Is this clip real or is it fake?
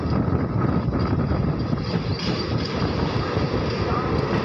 real